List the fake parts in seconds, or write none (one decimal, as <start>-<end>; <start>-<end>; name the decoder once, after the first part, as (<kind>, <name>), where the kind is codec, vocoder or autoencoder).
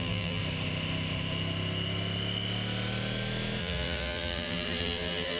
0.0-0.4 (vocoder, BigVGAN v2); 3.6-5.4